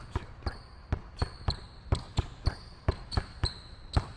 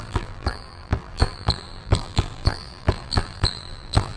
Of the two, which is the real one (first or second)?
first